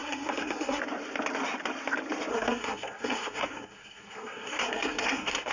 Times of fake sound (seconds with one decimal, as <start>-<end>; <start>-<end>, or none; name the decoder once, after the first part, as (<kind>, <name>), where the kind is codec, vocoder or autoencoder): 0.0-0.8 (codec, SNAC); 2.3-5.5